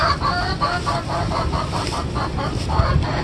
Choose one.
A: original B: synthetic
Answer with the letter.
A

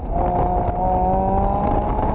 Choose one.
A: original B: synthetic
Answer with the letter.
A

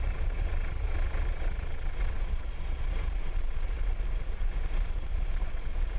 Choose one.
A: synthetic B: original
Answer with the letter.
A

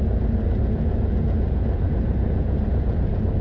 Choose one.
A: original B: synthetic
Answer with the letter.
B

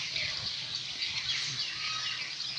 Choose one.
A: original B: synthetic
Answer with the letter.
A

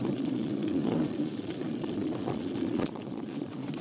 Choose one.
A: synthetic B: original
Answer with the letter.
A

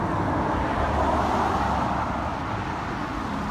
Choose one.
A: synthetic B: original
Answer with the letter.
B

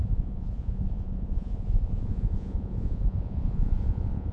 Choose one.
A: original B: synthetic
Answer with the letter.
B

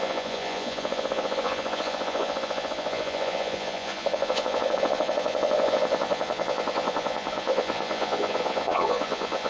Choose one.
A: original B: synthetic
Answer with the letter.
B